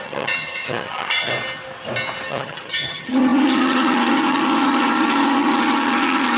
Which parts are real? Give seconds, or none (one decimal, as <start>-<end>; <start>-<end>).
1.3-2.3